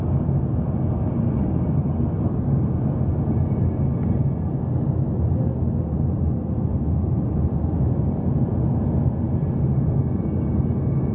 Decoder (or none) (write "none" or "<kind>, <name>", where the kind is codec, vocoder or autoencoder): none